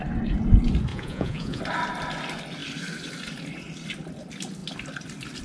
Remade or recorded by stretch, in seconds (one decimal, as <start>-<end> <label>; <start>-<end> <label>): 0.0-0.9 recorded; 0.9-1.6 remade; 1.6-5.4 recorded